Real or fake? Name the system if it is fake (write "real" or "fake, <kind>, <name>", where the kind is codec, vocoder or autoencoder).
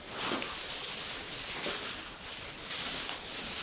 real